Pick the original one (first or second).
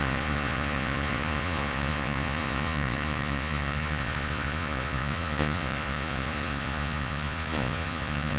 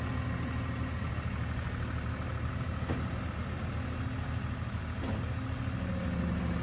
second